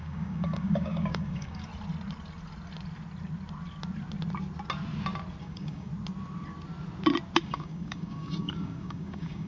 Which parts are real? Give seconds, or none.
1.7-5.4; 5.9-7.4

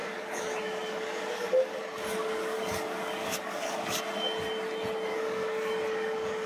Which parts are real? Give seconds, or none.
1.8-2.2; 4.0-5.1